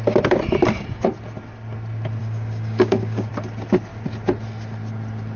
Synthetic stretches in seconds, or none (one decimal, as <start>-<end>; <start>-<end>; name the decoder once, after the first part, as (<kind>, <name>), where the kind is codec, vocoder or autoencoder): 2.2-3.3 (codec, DAC)